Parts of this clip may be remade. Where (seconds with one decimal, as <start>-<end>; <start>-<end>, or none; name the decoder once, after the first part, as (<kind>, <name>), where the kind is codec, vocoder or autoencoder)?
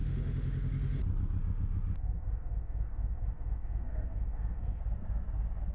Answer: 0.0-1.0 (autoencoder, DAC-VAE); 1.4-4.8